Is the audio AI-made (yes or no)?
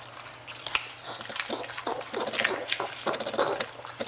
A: no